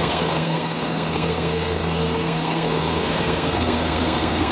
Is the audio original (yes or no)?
no